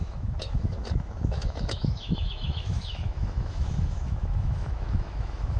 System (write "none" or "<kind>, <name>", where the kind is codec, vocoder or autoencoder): autoencoder, DAC-VAE